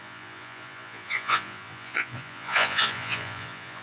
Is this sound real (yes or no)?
no